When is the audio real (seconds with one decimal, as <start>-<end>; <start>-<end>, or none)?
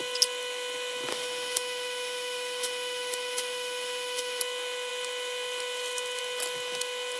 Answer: 0.0-1.1; 4.4-7.2